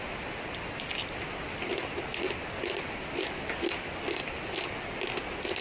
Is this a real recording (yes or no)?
yes